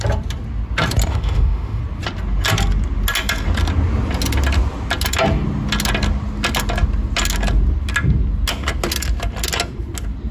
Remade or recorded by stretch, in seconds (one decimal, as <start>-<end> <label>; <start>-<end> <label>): 0.0-1.1 recorded; 1.1-1.8 remade; 1.8-10.3 recorded